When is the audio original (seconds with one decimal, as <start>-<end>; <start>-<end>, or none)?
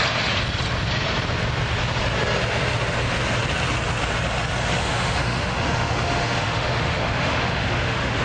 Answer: 0.0-4.8